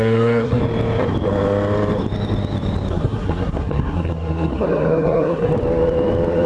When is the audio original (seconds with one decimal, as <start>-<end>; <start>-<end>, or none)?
0.6-2.9; 5.5-6.5